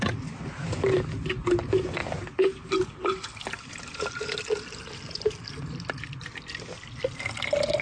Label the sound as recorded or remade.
recorded